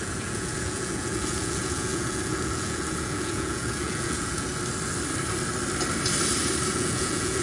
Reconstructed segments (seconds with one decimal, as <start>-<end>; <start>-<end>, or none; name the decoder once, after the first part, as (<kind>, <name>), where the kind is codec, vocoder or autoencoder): 0.0-4.5 (vocoder, Vocos); 6.7-7.4